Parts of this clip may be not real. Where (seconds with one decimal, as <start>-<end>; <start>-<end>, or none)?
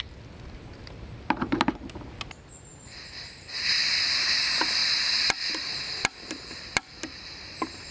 0.8-1.5; 2.7-3.5